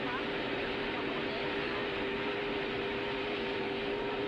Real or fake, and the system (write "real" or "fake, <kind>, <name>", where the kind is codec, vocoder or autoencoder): fake, vocoder, BigVGAN v2